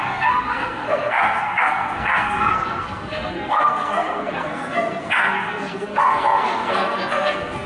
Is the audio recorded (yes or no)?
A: no